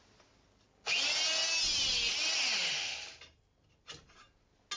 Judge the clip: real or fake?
real